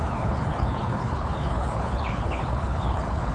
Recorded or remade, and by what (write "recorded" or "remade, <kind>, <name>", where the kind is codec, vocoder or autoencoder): remade, codec, HILCodec